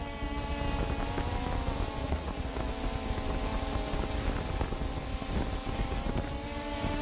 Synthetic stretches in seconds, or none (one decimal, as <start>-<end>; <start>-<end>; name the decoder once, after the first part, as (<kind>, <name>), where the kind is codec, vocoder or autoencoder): 2.0-2.6 (vocoder, Vocos)